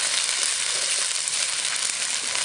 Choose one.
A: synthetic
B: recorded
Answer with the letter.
A